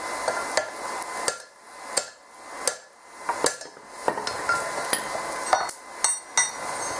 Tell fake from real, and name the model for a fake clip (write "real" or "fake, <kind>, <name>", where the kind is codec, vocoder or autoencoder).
real